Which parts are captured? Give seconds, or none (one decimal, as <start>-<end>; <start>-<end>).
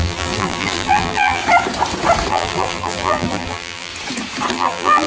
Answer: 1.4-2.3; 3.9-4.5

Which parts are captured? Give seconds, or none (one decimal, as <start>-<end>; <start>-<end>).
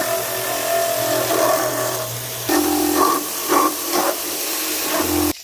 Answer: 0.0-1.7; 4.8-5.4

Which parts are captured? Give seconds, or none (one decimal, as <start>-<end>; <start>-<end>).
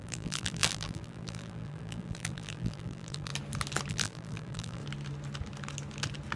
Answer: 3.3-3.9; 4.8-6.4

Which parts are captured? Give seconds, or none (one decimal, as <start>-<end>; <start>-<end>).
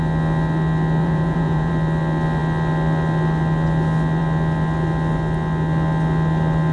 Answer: 0.0-1.0; 1.7-6.7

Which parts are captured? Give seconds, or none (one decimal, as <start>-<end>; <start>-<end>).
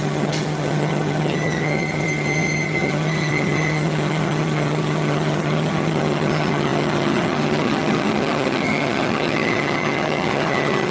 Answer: none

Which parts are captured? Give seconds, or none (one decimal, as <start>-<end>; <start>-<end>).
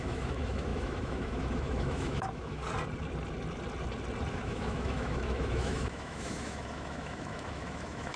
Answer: 2.6-4.3